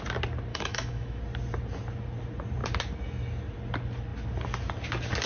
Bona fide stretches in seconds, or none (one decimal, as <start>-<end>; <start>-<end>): 0.0-0.5; 1.2-5.3